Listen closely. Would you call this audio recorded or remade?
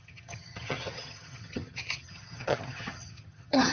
remade